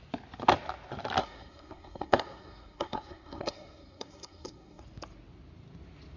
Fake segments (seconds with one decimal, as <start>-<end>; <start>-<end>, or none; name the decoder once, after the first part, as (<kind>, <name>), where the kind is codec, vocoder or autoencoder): 1.2-4.8 (codec, SNAC)